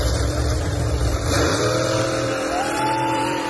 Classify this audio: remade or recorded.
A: remade